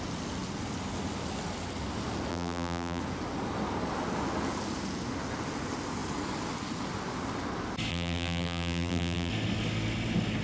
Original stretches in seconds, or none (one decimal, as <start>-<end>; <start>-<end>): 0.0-2.3; 3.0-7.9; 9.3-10.4

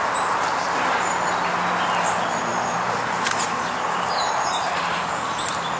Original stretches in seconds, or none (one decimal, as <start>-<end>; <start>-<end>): 0.0-2.5; 5.1-5.8

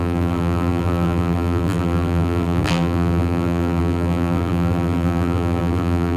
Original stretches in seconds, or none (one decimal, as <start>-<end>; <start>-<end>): none

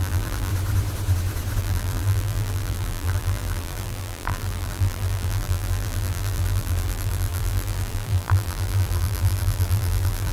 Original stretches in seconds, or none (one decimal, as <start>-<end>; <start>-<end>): 0.5-1.6